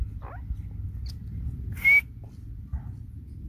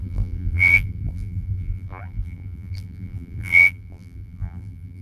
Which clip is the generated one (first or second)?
second